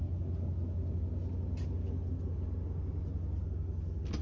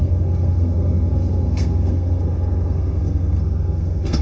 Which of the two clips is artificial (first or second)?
second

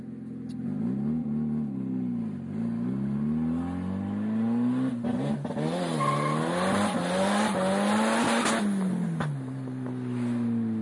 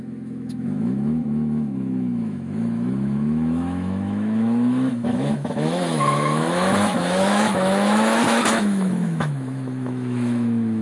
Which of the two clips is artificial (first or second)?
second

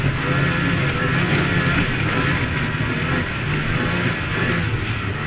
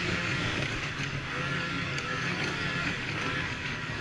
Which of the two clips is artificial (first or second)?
second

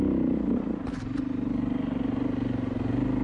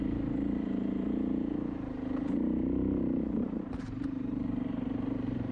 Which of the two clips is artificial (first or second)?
second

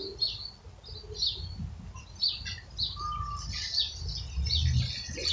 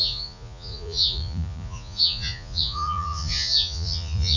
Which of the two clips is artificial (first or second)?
second